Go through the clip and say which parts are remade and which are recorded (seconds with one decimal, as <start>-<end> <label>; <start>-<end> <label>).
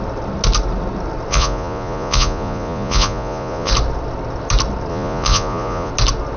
0.0-1.3 recorded; 1.3-3.7 remade; 3.7-4.9 recorded; 4.9-5.9 remade; 5.9-6.4 recorded